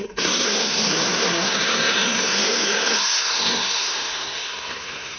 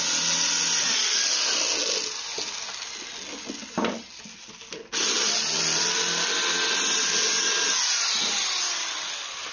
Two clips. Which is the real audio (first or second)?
second